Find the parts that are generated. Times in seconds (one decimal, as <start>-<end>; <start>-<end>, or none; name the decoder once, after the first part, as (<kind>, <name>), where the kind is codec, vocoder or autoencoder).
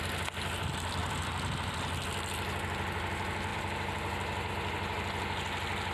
3.5-4.5 (vocoder, BigVGAN v2)